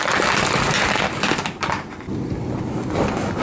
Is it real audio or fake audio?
real